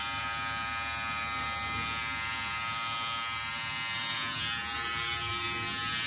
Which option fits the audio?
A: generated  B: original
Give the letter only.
B